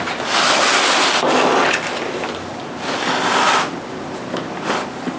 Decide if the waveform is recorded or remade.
recorded